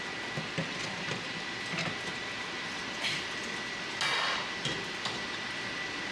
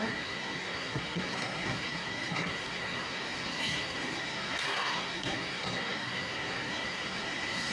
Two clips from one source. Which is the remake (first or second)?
second